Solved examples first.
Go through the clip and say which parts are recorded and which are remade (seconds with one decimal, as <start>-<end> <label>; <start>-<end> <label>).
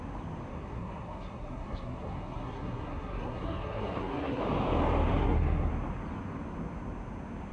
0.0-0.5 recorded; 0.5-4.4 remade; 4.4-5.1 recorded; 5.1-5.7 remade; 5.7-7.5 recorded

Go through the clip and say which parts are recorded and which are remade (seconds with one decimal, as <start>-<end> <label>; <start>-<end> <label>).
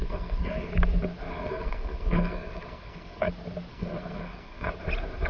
0.0-0.7 remade; 0.7-1.3 recorded; 1.3-3.3 remade; 3.3-3.7 recorded; 3.7-4.7 remade; 4.7-5.3 recorded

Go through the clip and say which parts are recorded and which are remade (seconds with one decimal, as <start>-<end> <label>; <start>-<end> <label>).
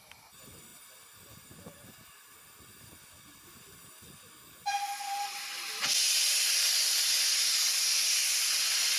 0.0-9.0 recorded